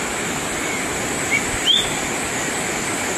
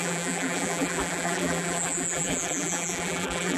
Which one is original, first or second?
first